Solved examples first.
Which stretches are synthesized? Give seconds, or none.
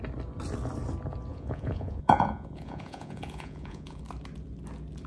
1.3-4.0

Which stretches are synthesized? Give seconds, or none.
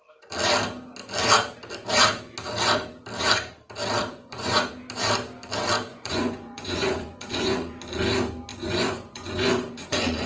4.1-4.7; 5.9-7.7; 8.5-10.3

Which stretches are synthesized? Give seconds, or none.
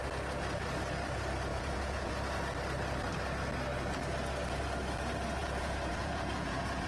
1.5-2.1; 5.4-6.9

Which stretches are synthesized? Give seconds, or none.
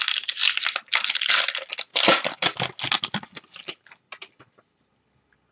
none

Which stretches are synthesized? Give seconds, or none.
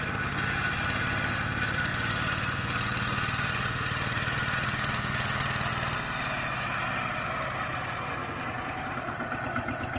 1.9-5.7; 8.2-8.8